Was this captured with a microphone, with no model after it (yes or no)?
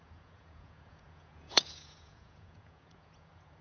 no